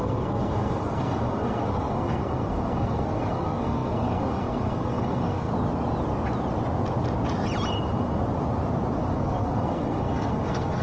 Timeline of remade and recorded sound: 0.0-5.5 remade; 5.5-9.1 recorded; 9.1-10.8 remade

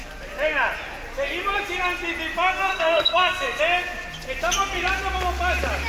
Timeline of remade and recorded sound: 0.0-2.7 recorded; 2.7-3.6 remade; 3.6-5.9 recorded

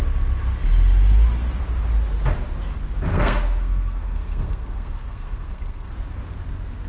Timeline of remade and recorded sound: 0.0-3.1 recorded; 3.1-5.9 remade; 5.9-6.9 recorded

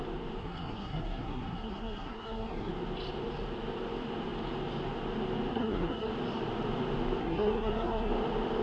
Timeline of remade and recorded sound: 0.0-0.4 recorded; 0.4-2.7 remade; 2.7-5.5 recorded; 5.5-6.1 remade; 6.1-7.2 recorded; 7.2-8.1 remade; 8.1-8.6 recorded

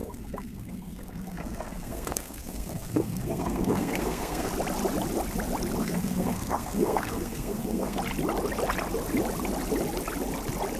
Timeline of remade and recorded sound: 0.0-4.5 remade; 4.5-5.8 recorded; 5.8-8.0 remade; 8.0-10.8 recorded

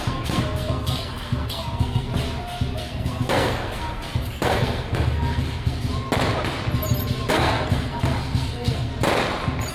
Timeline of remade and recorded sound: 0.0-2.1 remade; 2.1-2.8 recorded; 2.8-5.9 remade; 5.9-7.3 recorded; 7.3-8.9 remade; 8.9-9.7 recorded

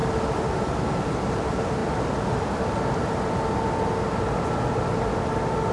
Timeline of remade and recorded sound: 0.0-5.7 recorded